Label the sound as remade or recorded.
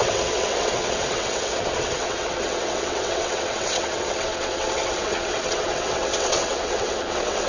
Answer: remade